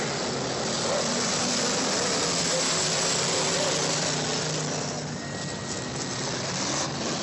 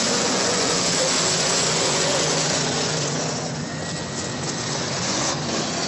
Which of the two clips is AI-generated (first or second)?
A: second